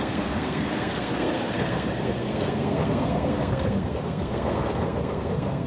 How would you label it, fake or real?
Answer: fake